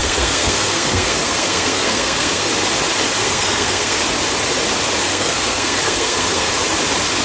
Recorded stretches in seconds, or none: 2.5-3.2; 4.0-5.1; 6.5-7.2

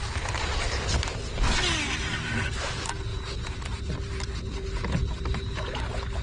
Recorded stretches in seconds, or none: 0.0-3.1; 3.9-6.2

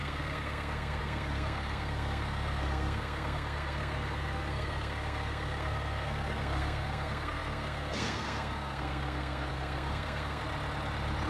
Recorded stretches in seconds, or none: 10.4-11.3

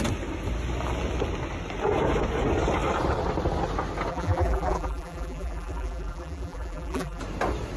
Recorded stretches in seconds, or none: 0.0-4.1; 7.2-7.8

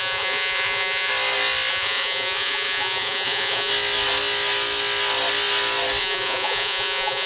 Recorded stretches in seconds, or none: 1.1-1.7; 3.7-6.0

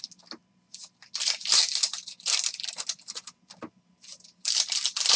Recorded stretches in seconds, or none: 0.0-5.2